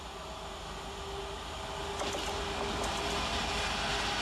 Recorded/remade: recorded